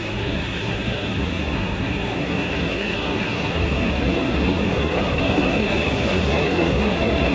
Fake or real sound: fake